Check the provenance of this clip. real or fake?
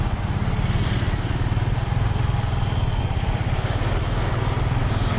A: real